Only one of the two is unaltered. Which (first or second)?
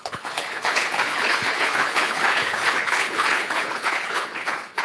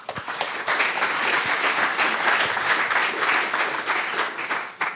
second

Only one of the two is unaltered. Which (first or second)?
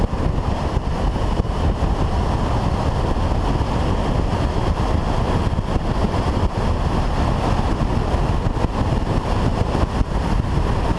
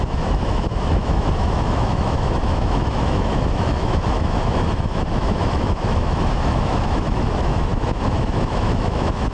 first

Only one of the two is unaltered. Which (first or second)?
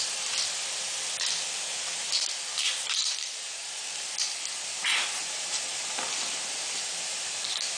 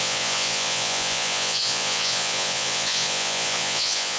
first